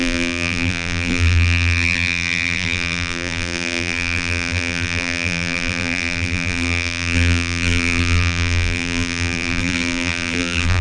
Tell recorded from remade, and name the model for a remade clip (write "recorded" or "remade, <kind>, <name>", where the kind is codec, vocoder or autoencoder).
remade, vocoder, BigVGAN v2